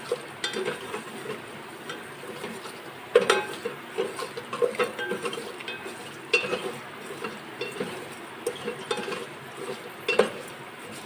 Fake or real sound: real